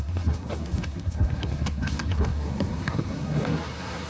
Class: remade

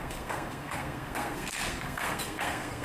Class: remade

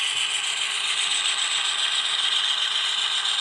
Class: recorded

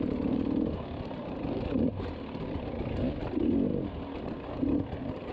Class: recorded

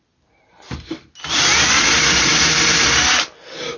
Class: recorded